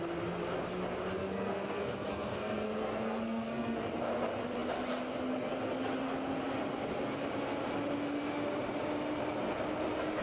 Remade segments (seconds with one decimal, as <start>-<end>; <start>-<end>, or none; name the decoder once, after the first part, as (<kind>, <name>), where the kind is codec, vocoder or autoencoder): 1.2-3.8 (codec, SNAC)